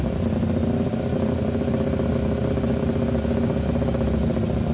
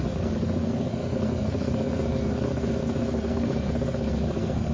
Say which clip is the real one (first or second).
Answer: first